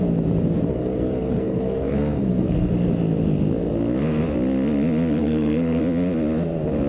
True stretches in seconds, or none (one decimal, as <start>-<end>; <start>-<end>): 0.0-0.7; 2.7-5.2; 5.8-6.9